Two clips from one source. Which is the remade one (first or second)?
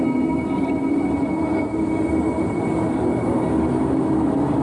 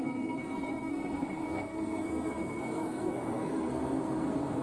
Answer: second